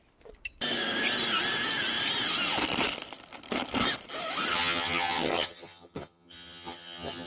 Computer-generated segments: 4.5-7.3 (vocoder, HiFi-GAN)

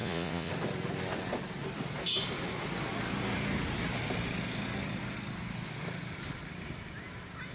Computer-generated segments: 0.0-0.5 (vocoder, Vocos)

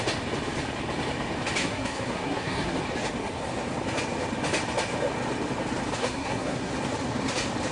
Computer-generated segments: 1.6-2.8 (codec, SNAC); 6.0-6.7

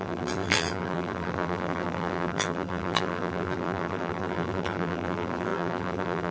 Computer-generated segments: 0.0-6.3 (vocoder, BigVGAN v2)

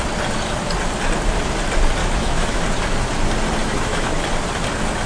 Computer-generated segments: 2.0-2.6 (autoencoder, DAC-VAE); 3.6-4.1

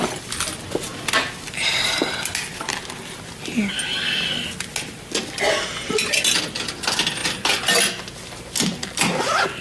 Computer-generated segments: none